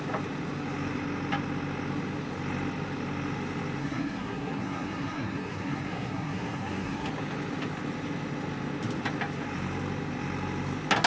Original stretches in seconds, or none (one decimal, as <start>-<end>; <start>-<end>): 0.0-3.8; 7.1-11.1